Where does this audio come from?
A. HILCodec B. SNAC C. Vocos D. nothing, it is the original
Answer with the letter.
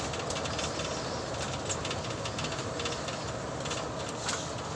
D